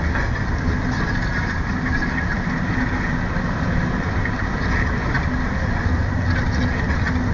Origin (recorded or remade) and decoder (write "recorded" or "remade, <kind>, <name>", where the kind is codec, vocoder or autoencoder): recorded